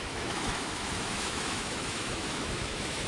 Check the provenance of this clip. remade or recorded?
remade